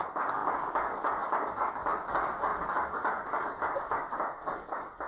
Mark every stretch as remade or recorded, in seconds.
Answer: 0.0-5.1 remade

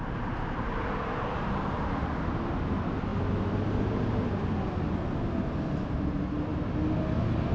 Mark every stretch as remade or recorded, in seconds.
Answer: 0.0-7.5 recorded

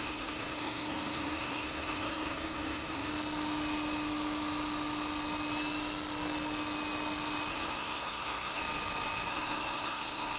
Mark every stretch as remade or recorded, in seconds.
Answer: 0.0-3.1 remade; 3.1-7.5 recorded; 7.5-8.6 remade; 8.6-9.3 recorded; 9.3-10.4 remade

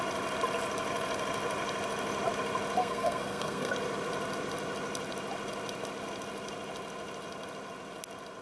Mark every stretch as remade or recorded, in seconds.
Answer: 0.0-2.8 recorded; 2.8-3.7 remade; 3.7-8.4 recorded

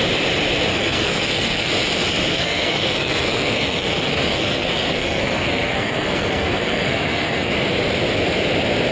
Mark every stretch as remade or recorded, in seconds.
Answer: 0.0-0.7 recorded; 0.7-1.7 remade; 1.7-2.3 recorded; 2.3-7.5 remade; 7.5-8.9 recorded